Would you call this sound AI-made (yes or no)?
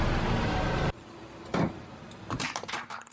yes